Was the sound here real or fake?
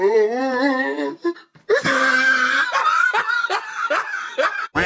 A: real